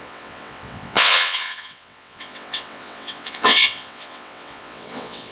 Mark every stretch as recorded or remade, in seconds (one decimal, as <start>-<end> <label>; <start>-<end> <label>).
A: 0.0-5.3 remade